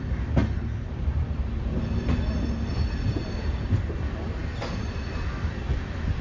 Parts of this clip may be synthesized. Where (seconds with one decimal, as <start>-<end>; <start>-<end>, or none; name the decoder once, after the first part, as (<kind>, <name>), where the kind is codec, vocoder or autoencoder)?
none